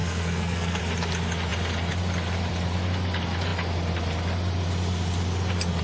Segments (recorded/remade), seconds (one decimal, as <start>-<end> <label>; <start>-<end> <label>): 0.0-0.8 remade; 0.8-5.8 recorded